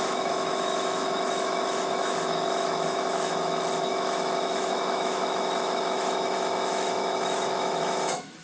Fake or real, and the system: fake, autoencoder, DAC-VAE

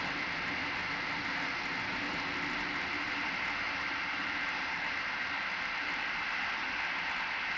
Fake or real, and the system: real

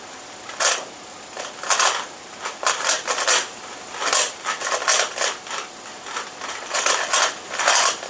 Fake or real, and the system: real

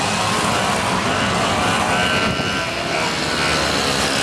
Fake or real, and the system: real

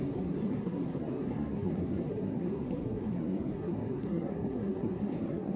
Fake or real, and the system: fake, codec, SNAC